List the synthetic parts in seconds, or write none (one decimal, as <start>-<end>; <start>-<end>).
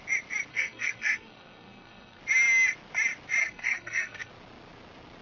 0.5-2.2; 3.4-4.3